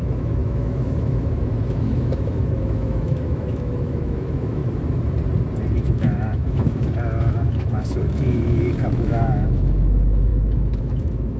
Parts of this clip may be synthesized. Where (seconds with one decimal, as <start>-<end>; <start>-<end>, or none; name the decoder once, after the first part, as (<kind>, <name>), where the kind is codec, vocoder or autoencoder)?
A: 0.0-4.6 (autoencoder, DAC-VAE); 5.8-11.4